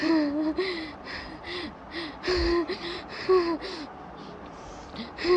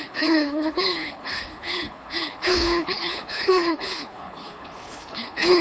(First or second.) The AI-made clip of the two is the second